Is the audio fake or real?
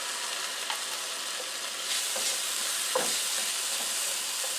real